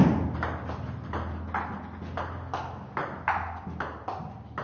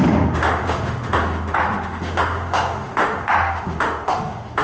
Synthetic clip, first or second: second